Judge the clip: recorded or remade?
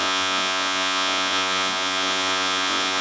remade